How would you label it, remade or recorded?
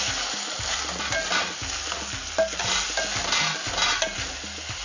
recorded